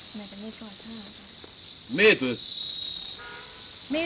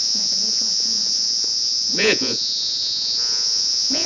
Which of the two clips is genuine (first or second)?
first